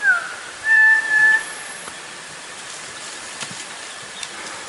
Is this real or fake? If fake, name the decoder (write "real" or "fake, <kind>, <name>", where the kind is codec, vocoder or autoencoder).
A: fake, vocoder, BigVGAN v2